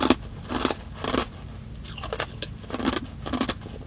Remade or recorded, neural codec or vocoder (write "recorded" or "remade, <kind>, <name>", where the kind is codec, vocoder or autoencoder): recorded